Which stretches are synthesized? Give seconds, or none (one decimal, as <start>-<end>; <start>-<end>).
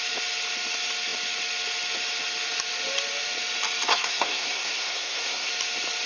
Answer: 3.9-5.5